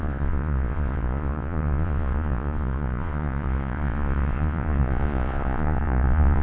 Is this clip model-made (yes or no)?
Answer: yes